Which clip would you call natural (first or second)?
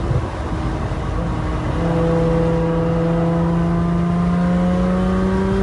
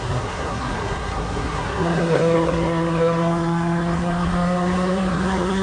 first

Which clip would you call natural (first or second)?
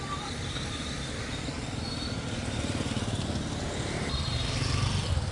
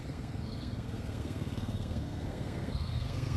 first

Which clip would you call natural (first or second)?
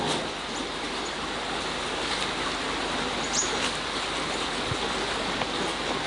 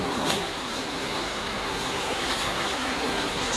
first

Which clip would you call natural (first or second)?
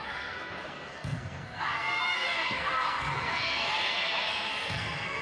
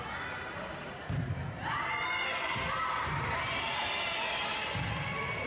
second